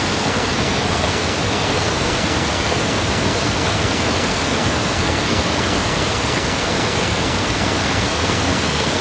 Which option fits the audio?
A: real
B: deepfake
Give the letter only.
B